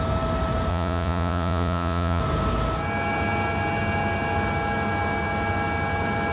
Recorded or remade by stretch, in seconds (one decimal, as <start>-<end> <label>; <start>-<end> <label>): 0.0-0.7 recorded; 0.7-2.2 remade; 2.2-6.3 recorded